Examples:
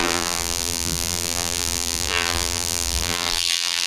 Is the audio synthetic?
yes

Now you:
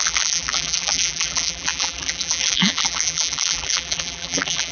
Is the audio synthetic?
yes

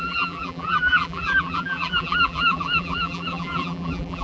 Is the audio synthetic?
yes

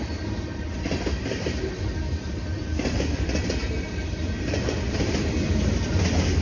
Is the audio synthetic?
yes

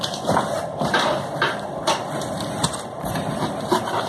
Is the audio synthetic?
yes